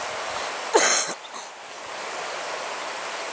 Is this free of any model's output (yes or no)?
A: yes